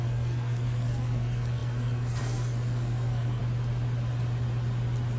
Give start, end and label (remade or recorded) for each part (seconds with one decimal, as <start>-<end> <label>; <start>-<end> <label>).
0.0-3.4 remade; 3.4-5.2 recorded